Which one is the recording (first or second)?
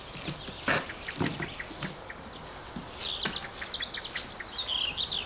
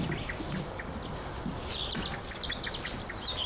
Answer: first